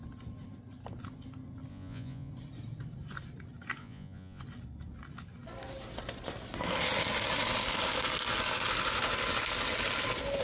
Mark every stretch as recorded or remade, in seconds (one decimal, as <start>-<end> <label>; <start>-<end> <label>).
0.0-1.7 recorded; 1.7-2.3 remade; 2.3-3.8 recorded; 3.8-4.4 remade; 4.4-10.4 recorded